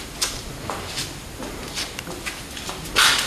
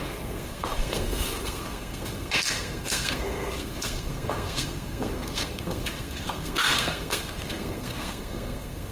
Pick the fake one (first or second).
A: second